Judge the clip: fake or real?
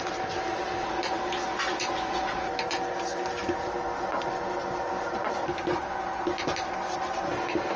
real